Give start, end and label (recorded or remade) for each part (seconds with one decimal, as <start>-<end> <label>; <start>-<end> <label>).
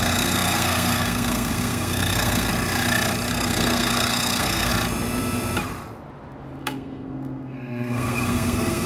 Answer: 0.0-2.5 remade; 2.5-3.3 recorded; 3.3-4.7 remade; 4.7-6.6 recorded; 6.6-8.9 remade